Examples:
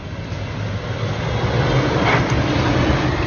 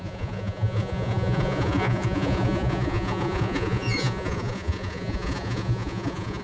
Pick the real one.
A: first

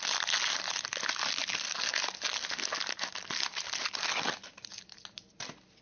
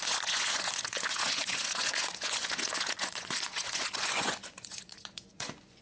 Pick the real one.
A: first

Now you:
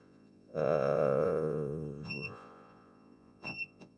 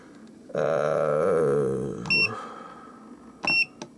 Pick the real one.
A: second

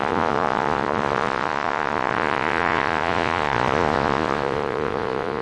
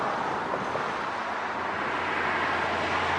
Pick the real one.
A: second